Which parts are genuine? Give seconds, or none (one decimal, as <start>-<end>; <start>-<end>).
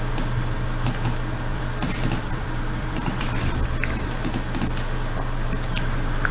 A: 0.0-1.5; 4.2-6.3